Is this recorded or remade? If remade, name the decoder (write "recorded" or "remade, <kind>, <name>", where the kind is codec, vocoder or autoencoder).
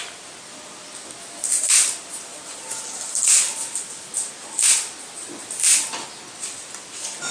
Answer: recorded